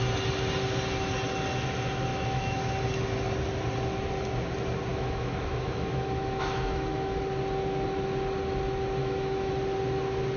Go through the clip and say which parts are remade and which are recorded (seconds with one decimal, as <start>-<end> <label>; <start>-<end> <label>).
0.0-2.1 recorded; 2.1-2.7 remade; 2.7-4.9 recorded; 4.9-7.2 remade; 7.2-9.0 recorded; 9.0-9.5 remade; 9.5-10.4 recorded